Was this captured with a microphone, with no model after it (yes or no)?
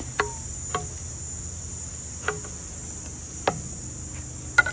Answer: yes